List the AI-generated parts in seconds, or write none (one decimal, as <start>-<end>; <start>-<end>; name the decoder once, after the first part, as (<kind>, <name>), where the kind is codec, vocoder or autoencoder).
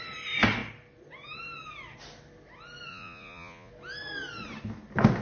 2.9-3.7 (vocoder, Vocos)